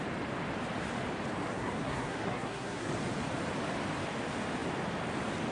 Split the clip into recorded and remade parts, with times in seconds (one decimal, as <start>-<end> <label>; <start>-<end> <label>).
0.0-1.5 recorded; 1.5-2.9 remade; 2.9-5.5 recorded